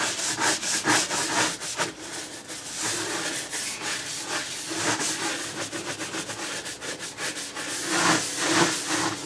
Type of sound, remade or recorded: recorded